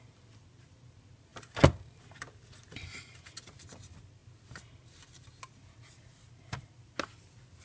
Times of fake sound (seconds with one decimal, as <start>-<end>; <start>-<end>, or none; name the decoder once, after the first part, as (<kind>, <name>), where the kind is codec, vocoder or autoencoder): 1.3-3.0 (vocoder, BigVGAN v2)